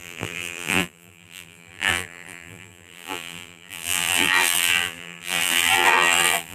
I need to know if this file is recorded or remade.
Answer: remade